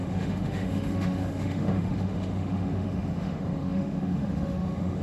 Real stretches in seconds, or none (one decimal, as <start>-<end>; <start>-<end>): none